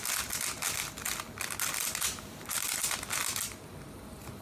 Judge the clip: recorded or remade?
recorded